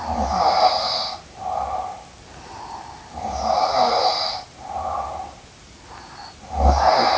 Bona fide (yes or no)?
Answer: yes